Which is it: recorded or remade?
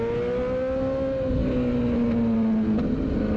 recorded